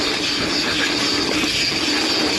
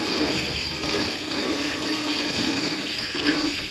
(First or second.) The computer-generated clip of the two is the second